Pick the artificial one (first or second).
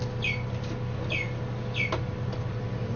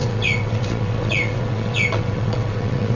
second